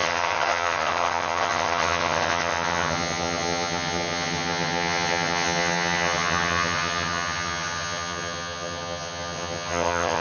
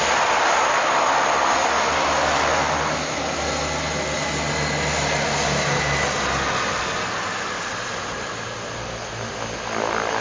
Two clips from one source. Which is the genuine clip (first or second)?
second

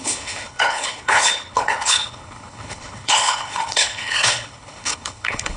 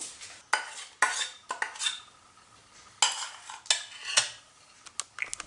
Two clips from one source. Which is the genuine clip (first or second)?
second